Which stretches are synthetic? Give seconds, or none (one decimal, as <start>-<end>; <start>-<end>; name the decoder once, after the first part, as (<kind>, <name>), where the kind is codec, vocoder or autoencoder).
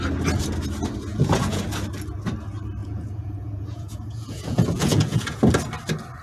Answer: 1.1-1.6 (vocoder, Vocos); 2.8-5.5